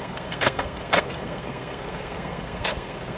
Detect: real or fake fake